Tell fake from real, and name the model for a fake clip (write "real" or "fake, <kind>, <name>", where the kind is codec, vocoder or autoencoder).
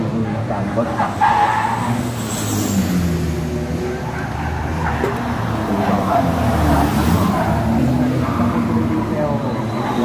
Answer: real